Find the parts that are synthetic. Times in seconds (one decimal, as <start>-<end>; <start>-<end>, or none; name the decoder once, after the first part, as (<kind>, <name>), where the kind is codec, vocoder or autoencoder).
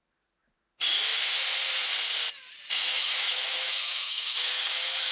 2.9-5.1 (autoencoder, DAC-VAE)